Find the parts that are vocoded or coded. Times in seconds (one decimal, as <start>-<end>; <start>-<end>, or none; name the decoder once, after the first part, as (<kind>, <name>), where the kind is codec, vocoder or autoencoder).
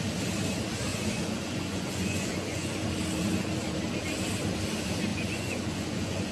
0.9-2.8 (vocoder, Vocos); 5.1-6.3